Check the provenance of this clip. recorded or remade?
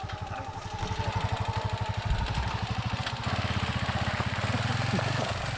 recorded